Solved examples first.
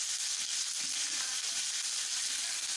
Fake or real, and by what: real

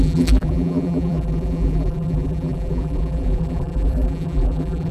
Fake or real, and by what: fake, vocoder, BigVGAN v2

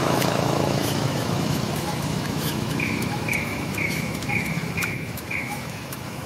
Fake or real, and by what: fake, autoencoder, DAC-VAE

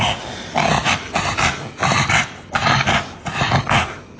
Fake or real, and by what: real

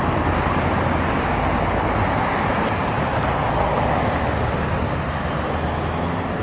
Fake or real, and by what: real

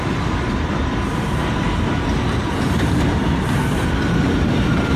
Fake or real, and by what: real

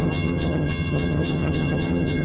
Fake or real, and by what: fake, vocoder, HiFi-GAN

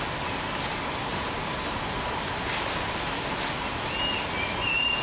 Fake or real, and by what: real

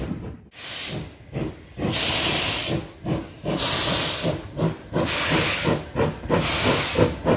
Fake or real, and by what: real